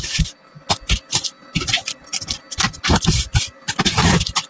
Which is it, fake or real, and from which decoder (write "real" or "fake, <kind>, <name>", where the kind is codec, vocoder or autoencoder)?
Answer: real